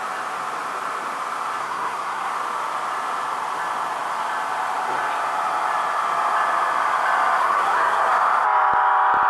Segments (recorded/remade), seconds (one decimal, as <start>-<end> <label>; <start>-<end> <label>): 0.0-1.6 recorded; 1.6-2.3 remade; 2.3-7.4 recorded; 7.4-8.1 remade; 8.1-9.3 recorded